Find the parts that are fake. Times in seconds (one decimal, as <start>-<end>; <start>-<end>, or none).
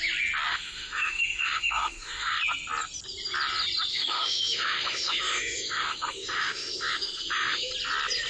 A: 0.5-2.4; 3.9-7.7